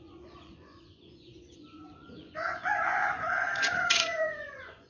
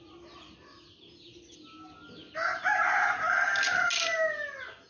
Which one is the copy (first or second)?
first